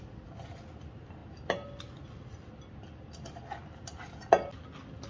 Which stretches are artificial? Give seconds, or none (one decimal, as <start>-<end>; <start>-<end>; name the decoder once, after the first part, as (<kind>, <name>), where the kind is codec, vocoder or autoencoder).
none

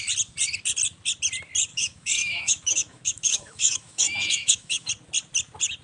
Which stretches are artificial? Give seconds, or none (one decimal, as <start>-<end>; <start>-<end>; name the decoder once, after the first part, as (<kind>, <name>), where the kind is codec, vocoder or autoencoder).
1.7-4.9 (autoencoder, DAC-VAE)

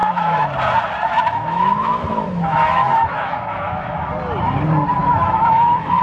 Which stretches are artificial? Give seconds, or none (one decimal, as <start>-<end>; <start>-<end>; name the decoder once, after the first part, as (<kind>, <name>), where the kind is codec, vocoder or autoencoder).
0.0-0.5 (autoencoder, DAC-VAE); 1.1-4.1; 5.0-6.0